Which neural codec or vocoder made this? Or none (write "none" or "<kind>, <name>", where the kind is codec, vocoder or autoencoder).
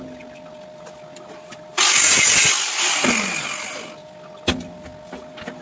none